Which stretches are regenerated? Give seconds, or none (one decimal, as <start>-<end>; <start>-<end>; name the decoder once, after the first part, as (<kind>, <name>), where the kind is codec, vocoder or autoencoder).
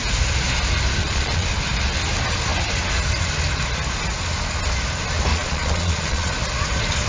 1.0-1.5 (vocoder, Vocos); 5.3-6.3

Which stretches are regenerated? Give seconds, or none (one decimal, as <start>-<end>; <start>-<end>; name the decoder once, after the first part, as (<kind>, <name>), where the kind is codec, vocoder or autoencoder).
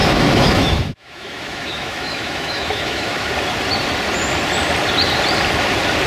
0.0-3.3 (autoencoder, DAC-VAE)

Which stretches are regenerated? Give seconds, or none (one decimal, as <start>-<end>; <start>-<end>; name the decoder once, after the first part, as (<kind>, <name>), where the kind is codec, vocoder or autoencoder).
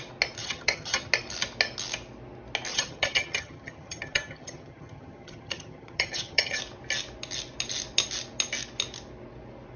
0.4-1.1 (vocoder, HiFi-GAN); 2.7-6.6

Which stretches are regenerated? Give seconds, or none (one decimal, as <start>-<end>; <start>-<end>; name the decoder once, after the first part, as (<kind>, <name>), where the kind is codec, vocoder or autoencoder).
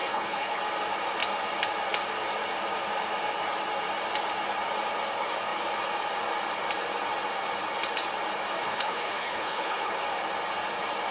0.0-0.6 (codec, HILCodec); 8.6-9.9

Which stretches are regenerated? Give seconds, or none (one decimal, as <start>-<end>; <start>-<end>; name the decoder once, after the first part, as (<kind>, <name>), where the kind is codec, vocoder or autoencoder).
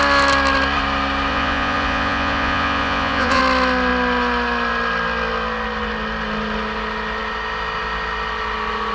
1.3-3.4 (vocoder, Vocos)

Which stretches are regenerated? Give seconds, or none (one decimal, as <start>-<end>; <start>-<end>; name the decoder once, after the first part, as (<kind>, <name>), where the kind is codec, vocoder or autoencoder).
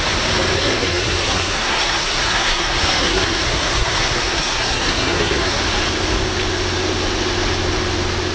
0.6-5.6 (codec, SNAC)